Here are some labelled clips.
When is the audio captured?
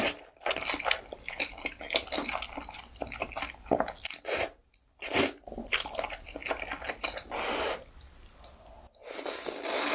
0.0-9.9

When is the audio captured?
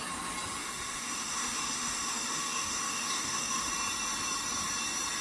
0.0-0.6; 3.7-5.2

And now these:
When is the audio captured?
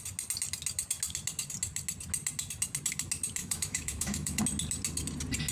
0.0-3.4; 4.4-5.5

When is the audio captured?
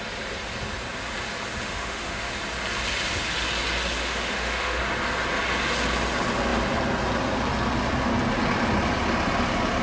0.0-1.6; 2.3-4.0; 4.8-9.8